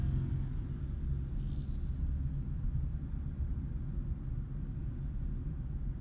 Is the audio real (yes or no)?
yes